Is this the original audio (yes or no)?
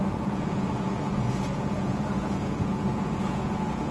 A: no